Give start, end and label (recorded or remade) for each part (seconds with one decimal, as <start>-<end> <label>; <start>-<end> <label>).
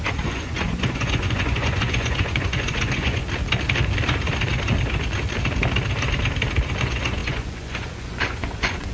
0.0-3.2 remade; 3.2-6.8 recorded; 6.8-8.9 remade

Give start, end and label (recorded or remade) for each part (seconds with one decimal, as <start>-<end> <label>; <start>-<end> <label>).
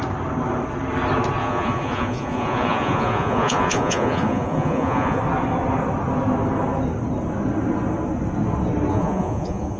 0.0-1.4 recorded; 1.4-5.2 remade; 5.2-8.9 recorded; 8.9-9.8 remade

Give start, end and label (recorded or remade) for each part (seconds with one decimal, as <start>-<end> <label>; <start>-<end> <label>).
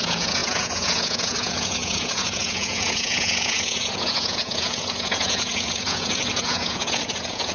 0.0-7.5 remade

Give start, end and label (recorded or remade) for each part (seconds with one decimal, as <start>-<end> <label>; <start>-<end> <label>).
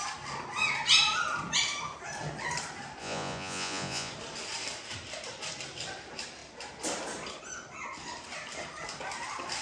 0.0-3.0 recorded; 3.0-4.1 remade; 4.1-9.6 recorded